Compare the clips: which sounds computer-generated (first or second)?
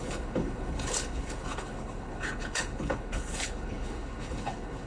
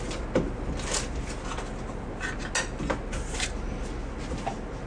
first